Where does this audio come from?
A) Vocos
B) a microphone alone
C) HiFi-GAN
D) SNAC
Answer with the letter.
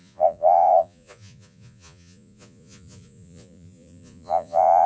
A